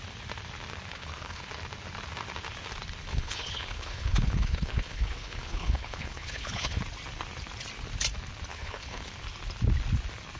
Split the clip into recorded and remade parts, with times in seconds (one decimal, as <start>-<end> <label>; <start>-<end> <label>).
0.0-0.9 recorded; 0.9-1.5 remade; 1.5-3.1 recorded; 3.1-6.8 remade; 6.8-8.5 recorded; 8.5-9.1 remade; 9.1-10.4 recorded